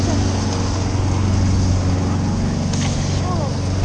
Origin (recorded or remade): recorded